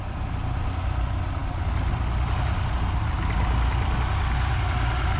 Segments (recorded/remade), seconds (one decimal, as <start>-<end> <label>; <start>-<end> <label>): 0.0-5.2 recorded